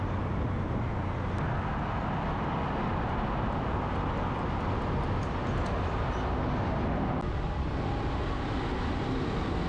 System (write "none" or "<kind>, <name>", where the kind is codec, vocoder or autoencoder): none